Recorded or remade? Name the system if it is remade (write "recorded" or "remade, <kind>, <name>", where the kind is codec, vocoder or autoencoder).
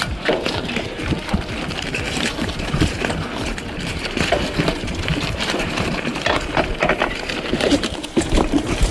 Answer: remade, vocoder, BigVGAN v2